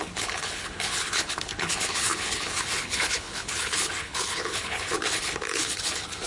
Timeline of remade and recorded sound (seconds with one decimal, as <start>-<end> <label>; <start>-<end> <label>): 0.0-6.3 remade